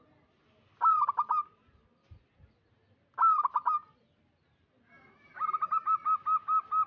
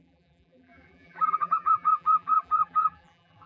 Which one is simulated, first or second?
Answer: second